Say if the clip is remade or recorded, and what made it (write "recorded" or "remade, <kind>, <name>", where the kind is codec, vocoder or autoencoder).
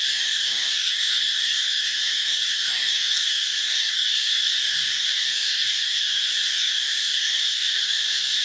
remade, codec, DAC